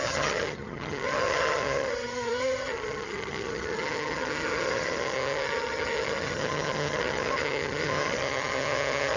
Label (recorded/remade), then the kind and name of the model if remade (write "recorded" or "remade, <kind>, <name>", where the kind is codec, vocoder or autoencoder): remade, vocoder, HiFi-GAN